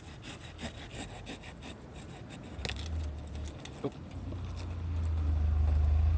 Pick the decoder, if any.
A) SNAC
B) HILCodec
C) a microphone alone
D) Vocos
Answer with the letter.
C